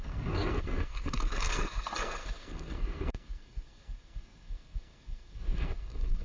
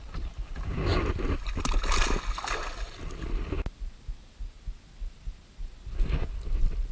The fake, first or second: first